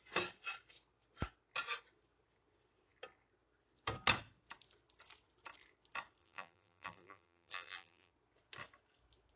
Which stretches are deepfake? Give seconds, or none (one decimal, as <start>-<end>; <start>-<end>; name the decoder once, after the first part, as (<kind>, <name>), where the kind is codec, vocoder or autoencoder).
6.2-8.1 (vocoder, BigVGAN v2)